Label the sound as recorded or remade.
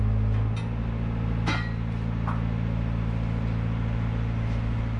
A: recorded